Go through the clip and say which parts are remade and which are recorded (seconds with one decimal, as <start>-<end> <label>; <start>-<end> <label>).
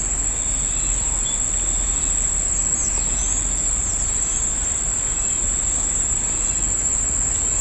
0.0-3.8 recorded; 3.8-6.5 remade; 6.5-7.6 recorded